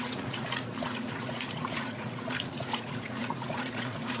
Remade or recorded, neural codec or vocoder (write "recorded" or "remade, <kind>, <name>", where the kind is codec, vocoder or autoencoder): remade, vocoder, Vocos